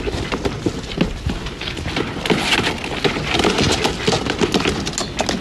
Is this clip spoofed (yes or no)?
no